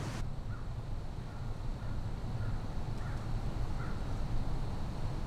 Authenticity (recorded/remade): recorded